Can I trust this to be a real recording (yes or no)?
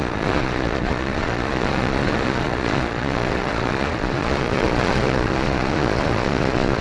no